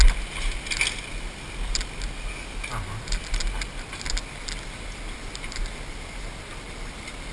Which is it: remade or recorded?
recorded